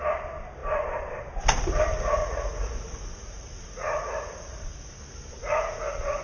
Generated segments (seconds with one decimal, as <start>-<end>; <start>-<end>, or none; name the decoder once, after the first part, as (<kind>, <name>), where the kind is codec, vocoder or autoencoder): 2.2-5.0 (vocoder, Vocos); 5.4-6.2